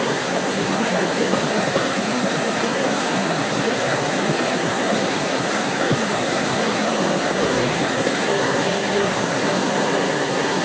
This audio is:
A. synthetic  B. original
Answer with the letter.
A